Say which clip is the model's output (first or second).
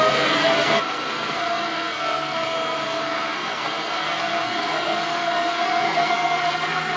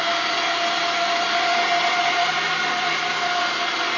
first